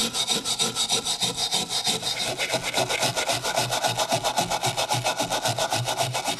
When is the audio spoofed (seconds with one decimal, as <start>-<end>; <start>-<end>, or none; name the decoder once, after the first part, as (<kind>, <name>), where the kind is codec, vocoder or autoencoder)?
none